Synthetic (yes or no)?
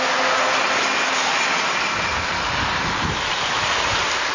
no